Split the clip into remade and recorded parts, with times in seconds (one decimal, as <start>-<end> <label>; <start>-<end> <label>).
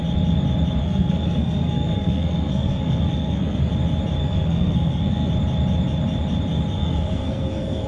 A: 0.0-0.8 recorded; 0.8-3.7 remade; 3.7-4.2 recorded; 4.2-5.3 remade; 5.3-6.8 recorded; 6.8-7.9 remade